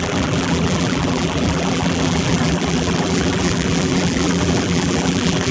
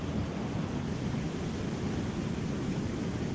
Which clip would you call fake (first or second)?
first